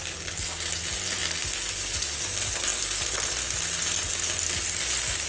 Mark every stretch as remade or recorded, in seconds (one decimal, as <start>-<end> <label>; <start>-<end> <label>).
0.0-5.3 recorded

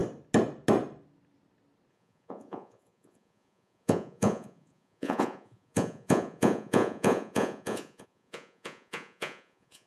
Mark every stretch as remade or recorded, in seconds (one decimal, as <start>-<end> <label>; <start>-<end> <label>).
0.0-1.9 recorded; 1.9-9.9 remade

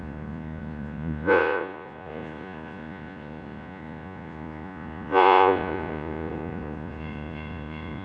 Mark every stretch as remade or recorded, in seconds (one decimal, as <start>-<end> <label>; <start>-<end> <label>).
0.0-8.0 remade

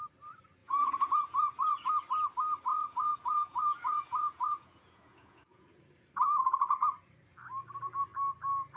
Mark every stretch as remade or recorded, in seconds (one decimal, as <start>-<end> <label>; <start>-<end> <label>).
0.0-0.6 recorded; 0.6-1.9 remade; 1.9-2.7 recorded; 2.7-5.8 remade; 5.8-8.8 recorded

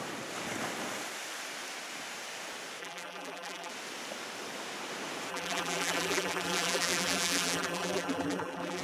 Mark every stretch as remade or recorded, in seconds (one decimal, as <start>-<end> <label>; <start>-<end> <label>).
0.0-2.8 recorded; 2.8-3.7 remade; 3.7-5.3 recorded; 5.3-8.8 remade

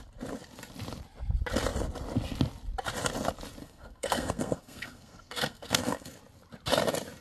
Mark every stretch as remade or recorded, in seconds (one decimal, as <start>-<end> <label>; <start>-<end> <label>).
0.0-3.6 recorded; 3.6-6.2 remade; 6.2-7.2 recorded

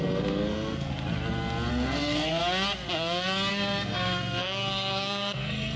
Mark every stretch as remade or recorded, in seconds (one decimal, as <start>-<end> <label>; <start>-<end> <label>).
0.0-0.9 remade; 0.9-1.7 recorded; 1.7-2.4 remade; 2.4-3.5 recorded; 3.5-5.8 remade